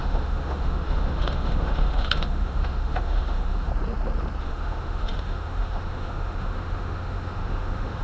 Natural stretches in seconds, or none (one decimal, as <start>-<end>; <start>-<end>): 3.7-4.4